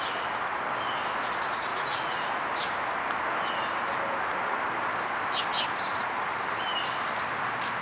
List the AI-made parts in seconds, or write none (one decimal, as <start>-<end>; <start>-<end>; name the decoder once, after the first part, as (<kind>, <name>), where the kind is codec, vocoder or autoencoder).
1.7-2.3 (vocoder, Vocos)